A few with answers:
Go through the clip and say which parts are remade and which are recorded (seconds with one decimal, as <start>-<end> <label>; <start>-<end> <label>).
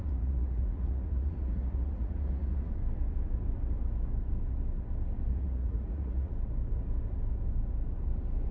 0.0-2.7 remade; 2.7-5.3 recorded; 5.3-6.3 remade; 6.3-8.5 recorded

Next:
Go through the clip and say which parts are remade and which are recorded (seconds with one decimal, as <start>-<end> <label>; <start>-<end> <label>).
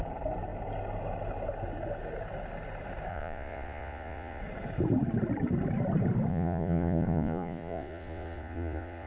0.0-3.1 recorded; 3.1-4.4 remade; 4.4-6.3 recorded; 6.3-9.1 remade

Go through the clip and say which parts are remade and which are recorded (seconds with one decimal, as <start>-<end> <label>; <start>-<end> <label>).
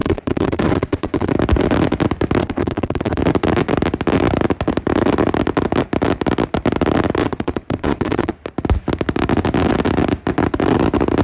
0.0-1.3 remade; 1.3-2.4 recorded; 2.4-3.2 remade; 3.2-7.2 recorded; 7.2-8.3 remade; 8.3-11.2 recorded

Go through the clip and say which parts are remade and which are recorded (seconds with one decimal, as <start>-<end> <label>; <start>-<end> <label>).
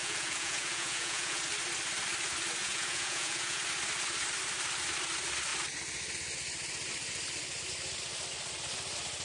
0.0-1.4 remade; 1.4-2.6 recorded; 2.6-3.6 remade; 3.6-9.2 recorded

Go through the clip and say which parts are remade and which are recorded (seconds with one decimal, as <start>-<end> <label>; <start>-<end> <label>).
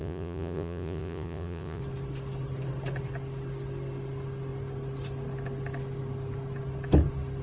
0.0-1.8 remade; 1.8-7.4 recorded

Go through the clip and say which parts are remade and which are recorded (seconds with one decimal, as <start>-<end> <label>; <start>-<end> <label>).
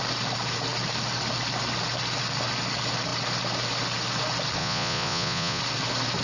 0.0-4.6 recorded; 4.6-5.6 remade; 5.6-6.2 recorded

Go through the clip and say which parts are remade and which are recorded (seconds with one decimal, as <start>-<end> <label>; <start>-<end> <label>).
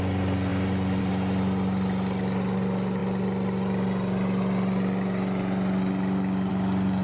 0.0-7.0 recorded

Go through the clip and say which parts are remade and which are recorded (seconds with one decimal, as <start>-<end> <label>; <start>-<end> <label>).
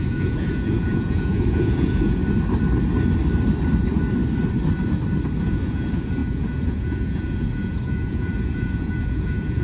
0.0-2.2 remade; 2.2-5.4 recorded; 5.4-9.6 remade